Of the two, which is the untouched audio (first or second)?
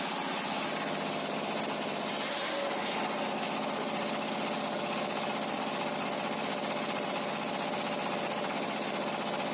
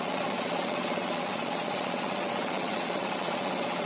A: first